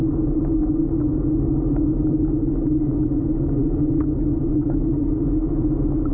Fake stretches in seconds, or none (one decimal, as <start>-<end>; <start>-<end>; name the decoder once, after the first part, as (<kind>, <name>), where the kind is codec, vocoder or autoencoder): none

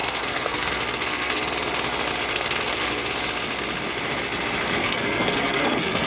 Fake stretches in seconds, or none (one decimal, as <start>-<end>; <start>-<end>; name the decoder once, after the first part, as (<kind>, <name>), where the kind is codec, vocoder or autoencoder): 0.0-1.4 (codec, SNAC); 2.3-3.1; 4.8-6.1

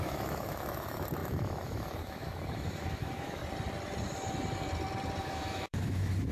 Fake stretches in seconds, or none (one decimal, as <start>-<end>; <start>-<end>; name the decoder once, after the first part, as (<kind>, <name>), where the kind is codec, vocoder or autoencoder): 0.0-3.4 (autoencoder, DAC-VAE); 5.2-6.3

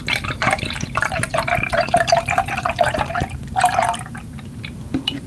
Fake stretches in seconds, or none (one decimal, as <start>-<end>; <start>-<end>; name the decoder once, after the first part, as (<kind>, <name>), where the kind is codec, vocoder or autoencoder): 0.0-5.3 (vocoder, BigVGAN v2)

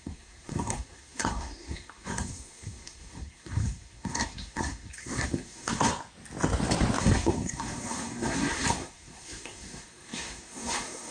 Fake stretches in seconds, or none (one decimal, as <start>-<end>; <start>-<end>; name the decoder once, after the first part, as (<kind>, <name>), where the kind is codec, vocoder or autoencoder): 0.0-5.9 (codec, SNAC); 7.0-11.1

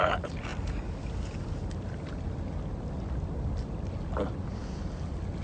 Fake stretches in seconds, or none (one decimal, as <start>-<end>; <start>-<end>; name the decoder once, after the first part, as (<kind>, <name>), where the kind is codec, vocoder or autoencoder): none

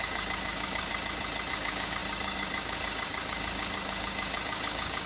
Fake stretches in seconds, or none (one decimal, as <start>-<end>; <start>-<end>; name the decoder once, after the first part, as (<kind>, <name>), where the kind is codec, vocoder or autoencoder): 0.0-0.9 (codec, DAC); 1.5-5.1